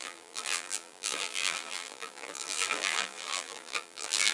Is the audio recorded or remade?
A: remade